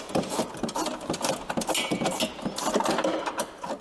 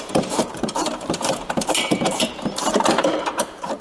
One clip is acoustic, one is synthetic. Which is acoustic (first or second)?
first